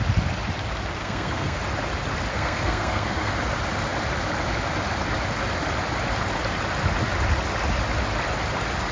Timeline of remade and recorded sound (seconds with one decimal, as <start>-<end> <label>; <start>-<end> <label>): 0.0-1.0 recorded; 1.0-1.6 remade; 1.6-2.3 recorded; 2.3-3.3 remade; 3.3-8.9 recorded